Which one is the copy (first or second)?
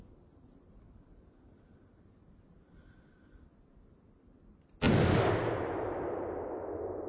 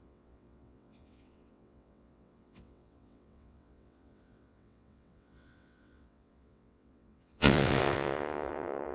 second